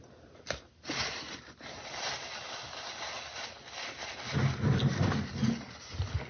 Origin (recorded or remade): recorded